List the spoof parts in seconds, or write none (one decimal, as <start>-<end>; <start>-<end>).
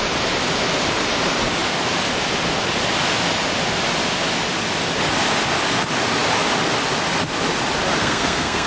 8.0-8.7